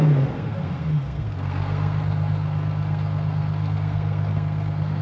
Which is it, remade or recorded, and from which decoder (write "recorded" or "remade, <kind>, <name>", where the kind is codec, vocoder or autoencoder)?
remade, codec, SNAC